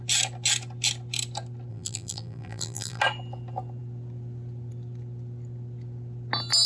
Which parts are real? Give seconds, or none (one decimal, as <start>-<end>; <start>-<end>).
0.0-1.7; 3.0-6.7